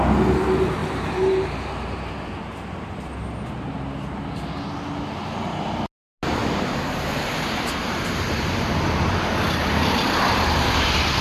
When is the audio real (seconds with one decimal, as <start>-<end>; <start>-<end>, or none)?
0.0-0.8; 2.1-6.4; 8.8-9.6